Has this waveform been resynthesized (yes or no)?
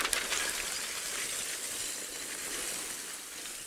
no